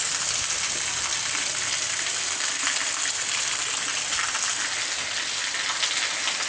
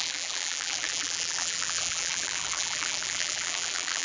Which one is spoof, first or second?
second